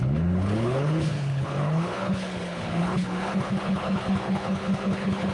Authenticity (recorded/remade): remade